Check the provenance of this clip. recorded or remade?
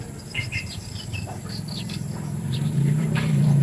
remade